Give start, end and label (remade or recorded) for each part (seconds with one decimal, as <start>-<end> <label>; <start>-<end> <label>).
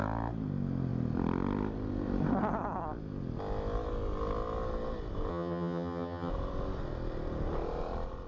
0.0-5.3 recorded; 5.3-6.3 remade; 6.3-8.3 recorded